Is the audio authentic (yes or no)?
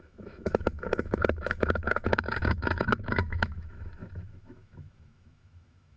no